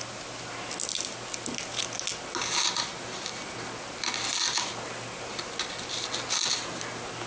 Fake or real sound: real